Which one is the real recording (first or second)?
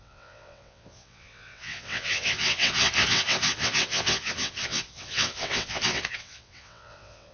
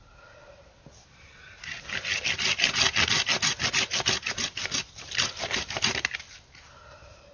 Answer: second